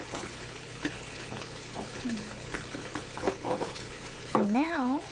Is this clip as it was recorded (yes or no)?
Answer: no